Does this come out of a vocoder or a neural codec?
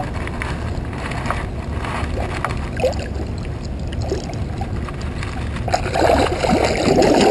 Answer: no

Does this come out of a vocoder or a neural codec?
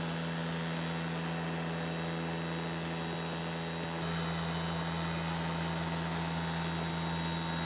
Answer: no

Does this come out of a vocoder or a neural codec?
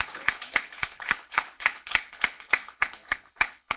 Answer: yes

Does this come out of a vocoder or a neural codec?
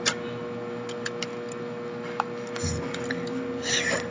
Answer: no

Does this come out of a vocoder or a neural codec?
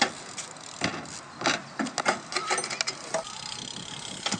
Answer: no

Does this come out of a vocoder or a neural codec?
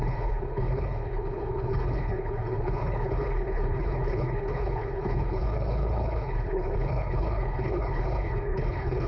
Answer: yes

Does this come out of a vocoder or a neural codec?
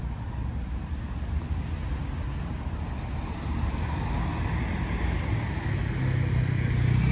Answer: no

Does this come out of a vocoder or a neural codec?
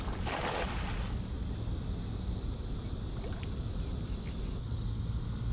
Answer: no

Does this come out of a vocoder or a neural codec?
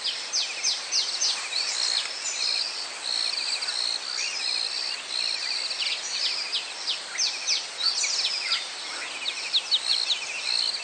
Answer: no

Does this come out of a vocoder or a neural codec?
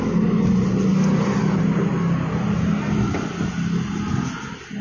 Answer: no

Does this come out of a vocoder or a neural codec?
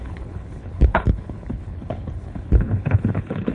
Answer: yes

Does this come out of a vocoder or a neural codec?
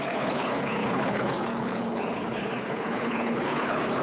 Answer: yes